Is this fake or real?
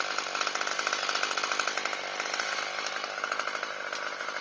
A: real